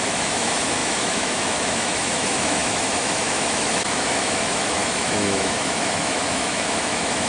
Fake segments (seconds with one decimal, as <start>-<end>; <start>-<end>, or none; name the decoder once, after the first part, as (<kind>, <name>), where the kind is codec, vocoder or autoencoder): 0.0-7.3 (autoencoder, DAC-VAE)